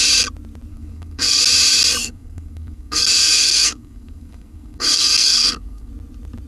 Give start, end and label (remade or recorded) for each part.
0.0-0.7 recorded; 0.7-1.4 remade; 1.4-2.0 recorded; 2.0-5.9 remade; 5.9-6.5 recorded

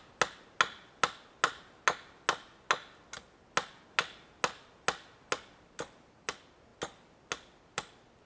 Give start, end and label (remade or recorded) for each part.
0.0-8.3 recorded

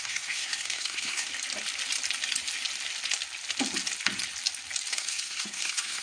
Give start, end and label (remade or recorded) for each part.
0.0-1.3 remade; 1.3-4.9 recorded; 4.9-6.0 remade